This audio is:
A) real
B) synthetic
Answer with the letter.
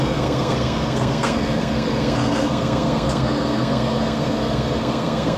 B